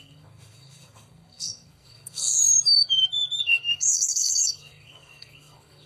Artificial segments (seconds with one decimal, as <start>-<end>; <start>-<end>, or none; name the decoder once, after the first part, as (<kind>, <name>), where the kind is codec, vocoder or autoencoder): 0.0-2.4 (codec, SNAC); 3.4-5.9